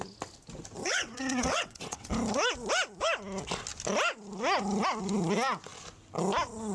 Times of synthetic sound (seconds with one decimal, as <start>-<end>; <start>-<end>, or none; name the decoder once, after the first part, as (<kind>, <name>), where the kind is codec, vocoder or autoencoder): 0.8-2.1 (vocoder, WaveNeXt)